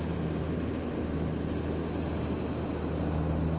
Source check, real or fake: real